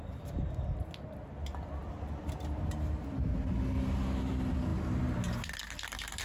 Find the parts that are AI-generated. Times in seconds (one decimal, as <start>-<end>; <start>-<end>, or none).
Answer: none